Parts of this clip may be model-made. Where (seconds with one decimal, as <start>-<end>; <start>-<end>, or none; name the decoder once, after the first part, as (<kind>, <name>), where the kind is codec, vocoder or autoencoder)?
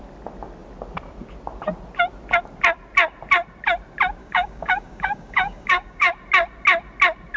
4.2-6.1 (codec, DAC)